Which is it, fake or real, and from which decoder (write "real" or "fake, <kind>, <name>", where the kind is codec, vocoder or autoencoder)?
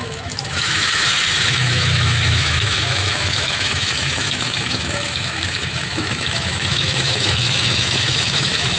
fake, autoencoder, DAC-VAE